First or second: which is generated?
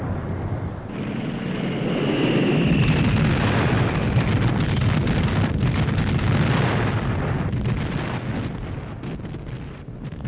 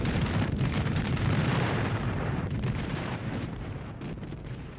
second